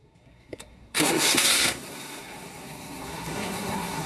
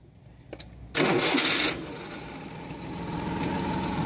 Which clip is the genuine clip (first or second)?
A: second